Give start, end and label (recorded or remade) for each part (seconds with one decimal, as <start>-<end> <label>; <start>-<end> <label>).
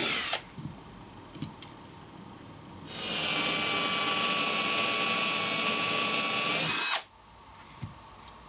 0.0-0.8 remade; 0.8-8.5 recorded